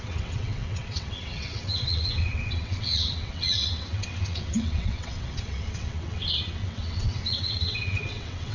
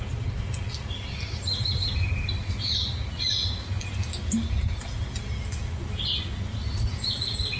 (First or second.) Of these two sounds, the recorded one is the second